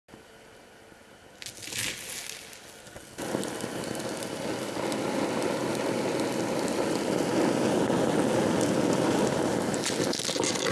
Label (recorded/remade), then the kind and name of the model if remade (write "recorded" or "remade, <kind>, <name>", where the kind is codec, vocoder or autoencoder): recorded